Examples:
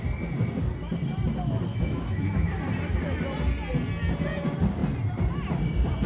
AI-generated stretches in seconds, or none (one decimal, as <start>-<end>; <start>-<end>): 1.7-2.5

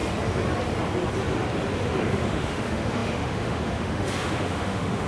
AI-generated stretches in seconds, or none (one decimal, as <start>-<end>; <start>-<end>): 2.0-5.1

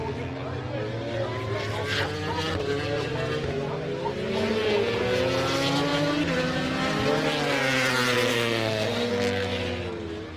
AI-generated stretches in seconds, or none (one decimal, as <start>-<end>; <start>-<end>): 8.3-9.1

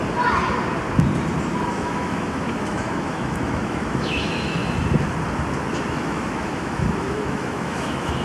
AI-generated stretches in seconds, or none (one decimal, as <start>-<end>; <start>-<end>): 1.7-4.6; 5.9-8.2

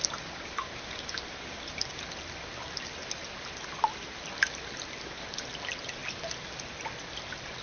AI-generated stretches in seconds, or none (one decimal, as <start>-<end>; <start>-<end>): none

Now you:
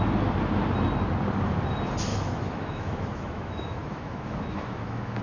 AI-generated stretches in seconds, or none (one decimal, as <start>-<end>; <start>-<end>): 2.1-5.2

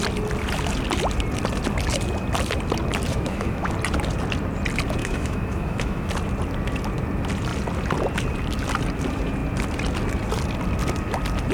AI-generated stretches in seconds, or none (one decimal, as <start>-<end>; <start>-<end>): 3.1-3.7; 5.0-6.1